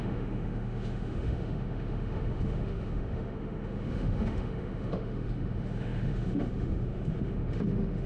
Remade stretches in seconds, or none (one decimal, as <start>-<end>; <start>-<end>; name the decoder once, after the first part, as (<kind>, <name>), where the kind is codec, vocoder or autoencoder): 0.0-8.1 (autoencoder, DAC-VAE)